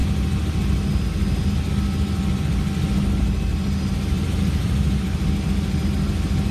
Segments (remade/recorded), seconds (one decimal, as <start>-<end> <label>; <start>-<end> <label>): 0.0-3.5 recorded; 3.5-5.5 remade; 5.5-6.5 recorded